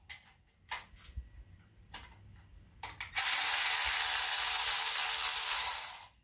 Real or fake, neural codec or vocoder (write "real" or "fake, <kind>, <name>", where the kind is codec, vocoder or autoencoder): real